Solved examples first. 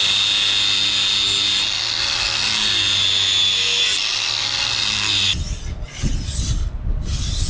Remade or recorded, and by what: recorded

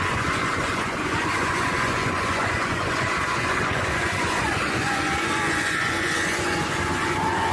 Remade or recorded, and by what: remade, vocoder, Vocos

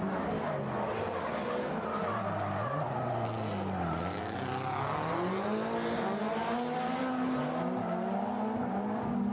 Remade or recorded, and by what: recorded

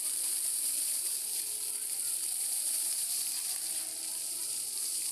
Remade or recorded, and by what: remade, vocoder, BigVGAN v2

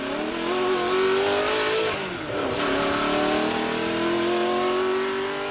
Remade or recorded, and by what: recorded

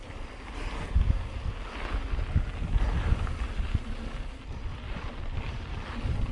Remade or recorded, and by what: recorded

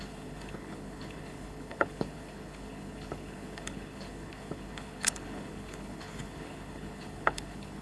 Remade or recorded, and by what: remade, codec, HILCodec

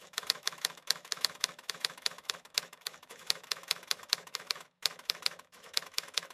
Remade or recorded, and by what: remade, autoencoder, DAC-VAE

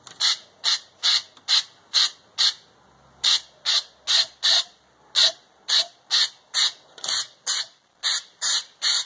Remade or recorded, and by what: recorded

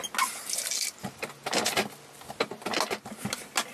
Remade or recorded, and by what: recorded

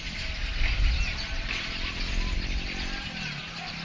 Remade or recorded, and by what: recorded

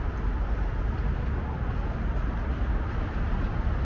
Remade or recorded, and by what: recorded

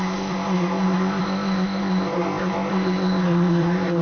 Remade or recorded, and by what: remade, codec, ZipCodec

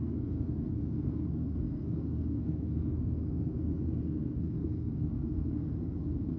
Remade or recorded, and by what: remade, codec, SNAC